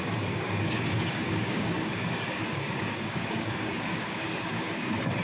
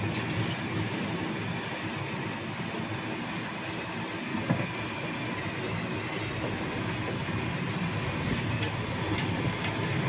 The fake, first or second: first